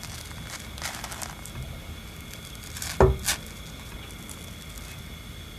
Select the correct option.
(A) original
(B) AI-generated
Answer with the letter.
A